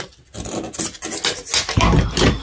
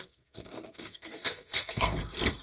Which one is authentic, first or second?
first